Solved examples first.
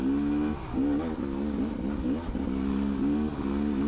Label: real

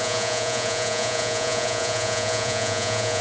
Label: fake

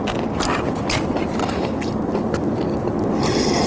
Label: real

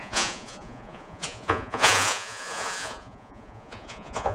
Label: fake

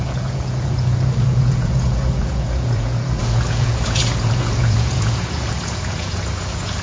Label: fake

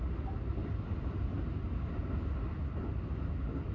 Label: real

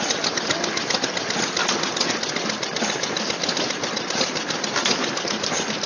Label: real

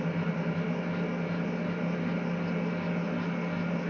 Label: real